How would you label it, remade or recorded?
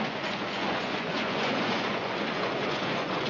remade